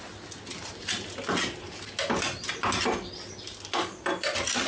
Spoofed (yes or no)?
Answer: no